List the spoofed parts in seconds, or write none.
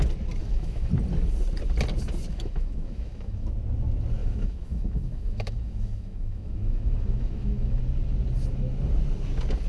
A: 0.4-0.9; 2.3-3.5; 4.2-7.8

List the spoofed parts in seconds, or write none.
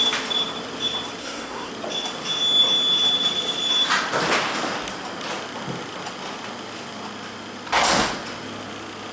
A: 1.2-1.7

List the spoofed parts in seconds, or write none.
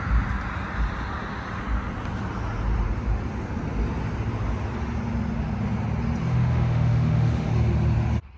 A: 6.3-7.5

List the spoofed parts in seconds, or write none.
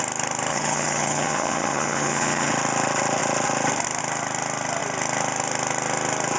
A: 0.5-2.5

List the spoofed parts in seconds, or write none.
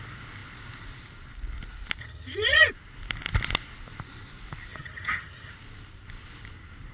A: 2.0-2.7; 4.7-5.5